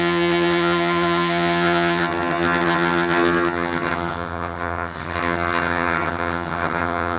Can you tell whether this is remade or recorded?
remade